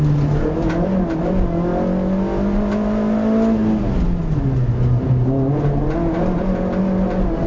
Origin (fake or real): real